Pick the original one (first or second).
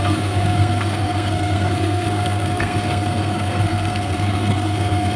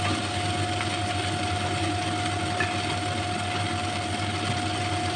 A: second